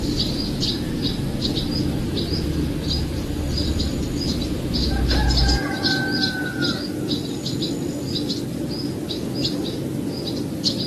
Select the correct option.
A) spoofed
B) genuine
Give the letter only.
B